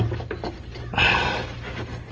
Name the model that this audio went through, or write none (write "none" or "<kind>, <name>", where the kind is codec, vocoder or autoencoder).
none